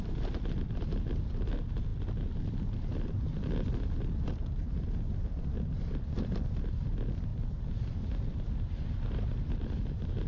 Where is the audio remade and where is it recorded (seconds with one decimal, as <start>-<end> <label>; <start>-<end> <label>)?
0.0-7.3 recorded; 7.3-8.5 remade; 8.5-10.3 recorded